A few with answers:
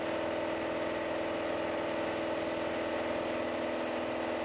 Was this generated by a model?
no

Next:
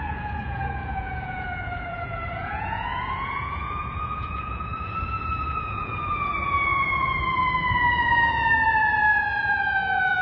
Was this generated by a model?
yes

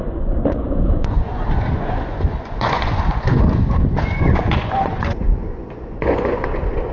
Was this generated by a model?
yes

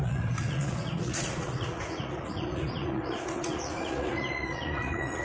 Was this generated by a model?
yes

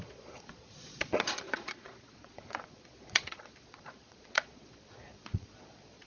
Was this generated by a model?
yes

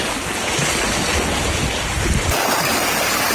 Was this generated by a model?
no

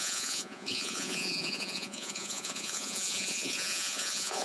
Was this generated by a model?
yes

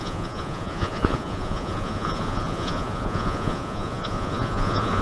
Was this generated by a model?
yes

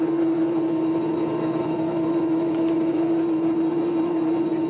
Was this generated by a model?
yes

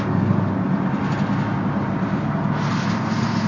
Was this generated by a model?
no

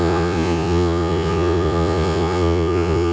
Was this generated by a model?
yes